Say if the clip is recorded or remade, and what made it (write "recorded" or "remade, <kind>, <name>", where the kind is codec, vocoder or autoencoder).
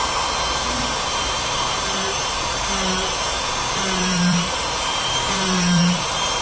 remade, vocoder, BigVGAN v2